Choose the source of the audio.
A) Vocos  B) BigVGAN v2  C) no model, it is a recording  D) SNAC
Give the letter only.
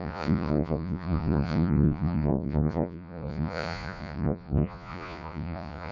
A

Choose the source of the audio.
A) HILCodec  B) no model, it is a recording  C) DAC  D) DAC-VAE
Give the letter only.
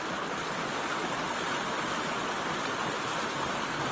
B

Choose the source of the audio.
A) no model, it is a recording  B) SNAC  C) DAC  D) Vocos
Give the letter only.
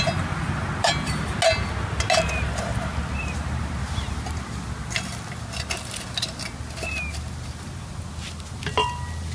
A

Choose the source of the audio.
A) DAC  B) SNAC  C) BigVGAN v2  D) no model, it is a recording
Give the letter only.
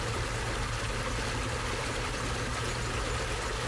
D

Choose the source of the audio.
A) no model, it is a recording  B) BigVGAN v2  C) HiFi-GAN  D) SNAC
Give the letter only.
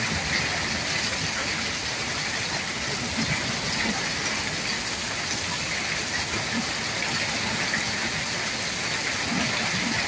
A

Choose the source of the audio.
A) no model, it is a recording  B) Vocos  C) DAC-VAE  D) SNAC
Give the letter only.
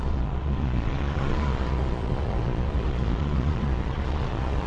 B